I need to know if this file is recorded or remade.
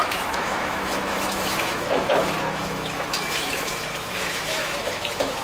remade